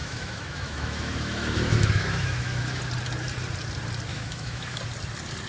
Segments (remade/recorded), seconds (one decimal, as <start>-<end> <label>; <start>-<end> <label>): 0.0-2.8 remade; 2.8-4.1 recorded; 4.1-4.8 remade; 4.8-5.5 recorded